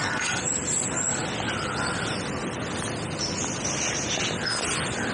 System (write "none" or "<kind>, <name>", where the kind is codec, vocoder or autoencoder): none